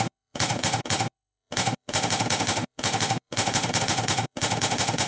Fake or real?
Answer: fake